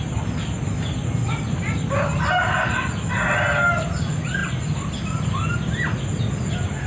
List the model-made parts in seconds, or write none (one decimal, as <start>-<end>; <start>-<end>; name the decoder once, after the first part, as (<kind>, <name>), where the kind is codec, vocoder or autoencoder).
none